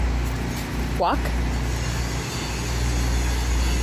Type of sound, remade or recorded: recorded